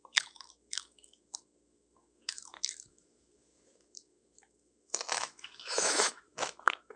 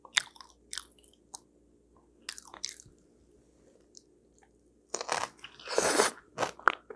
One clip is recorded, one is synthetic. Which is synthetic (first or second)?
first